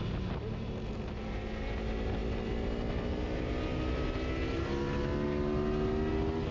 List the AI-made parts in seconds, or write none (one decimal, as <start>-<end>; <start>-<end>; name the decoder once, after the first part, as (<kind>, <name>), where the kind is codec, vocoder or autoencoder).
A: none

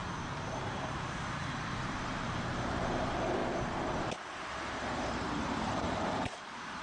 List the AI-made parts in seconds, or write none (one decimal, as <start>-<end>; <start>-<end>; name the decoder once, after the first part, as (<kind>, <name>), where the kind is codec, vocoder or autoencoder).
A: 0.0-3.4 (vocoder, BigVGAN v2); 5.0-6.8